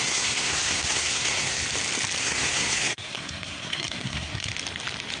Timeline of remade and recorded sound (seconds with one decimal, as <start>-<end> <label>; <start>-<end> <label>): 0.0-1.6 remade; 1.6-2.2 recorded; 2.2-4.5 remade; 4.5-5.2 recorded